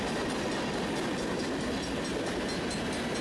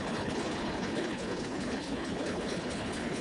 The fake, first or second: second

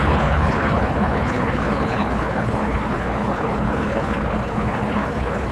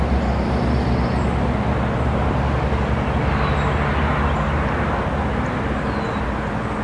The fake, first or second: first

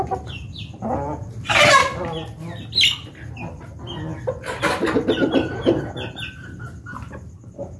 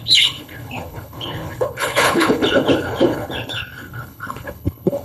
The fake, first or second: second